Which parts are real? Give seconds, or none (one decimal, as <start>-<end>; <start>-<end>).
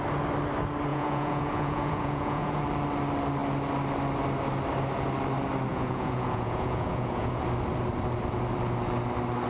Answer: 0.0-0.9; 2.6-5.7; 7.4-9.5